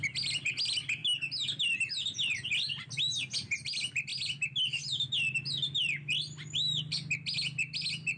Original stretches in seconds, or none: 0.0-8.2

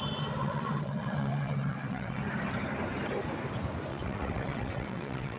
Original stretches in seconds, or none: 0.0-0.4; 2.2-3.9

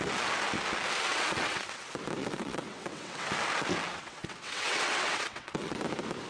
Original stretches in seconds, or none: 0.0-1.1; 1.8-2.2; 3.3-3.9; 5.8-6.3

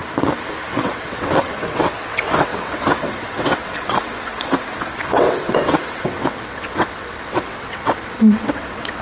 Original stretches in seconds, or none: 0.0-0.8

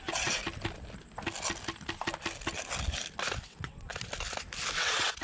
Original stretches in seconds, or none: 0.4-3.4; 3.9-4.8